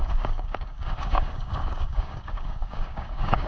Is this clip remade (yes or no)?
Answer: yes